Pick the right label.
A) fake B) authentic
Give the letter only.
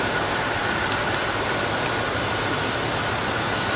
B